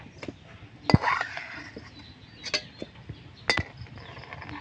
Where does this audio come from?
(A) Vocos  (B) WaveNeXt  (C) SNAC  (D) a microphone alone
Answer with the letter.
D